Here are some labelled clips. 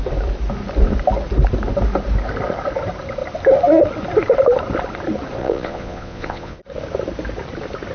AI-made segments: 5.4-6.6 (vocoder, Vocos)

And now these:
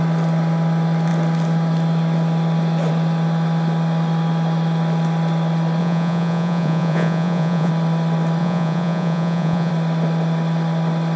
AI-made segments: 5.8-7.7 (vocoder, Vocos); 8.4-9.7

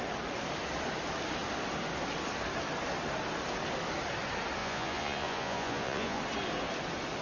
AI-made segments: 4.6-6.2 (vocoder, Vocos)

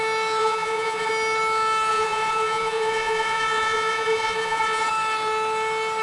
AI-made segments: 0.4-1.1 (vocoder, Vocos); 1.9-4.9

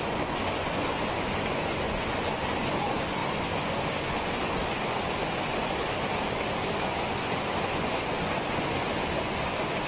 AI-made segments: 0.0-9.9 (vocoder, Vocos)

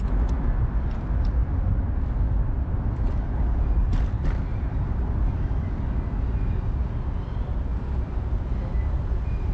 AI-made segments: none

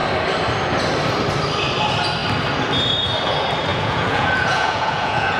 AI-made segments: 3.7-5.4 (vocoder, Vocos)

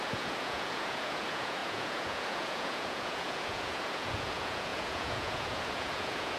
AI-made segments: 0.0-6.4 (vocoder, Vocos)